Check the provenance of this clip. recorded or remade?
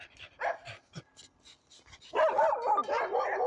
recorded